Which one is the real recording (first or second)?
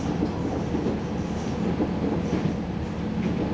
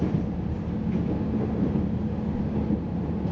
first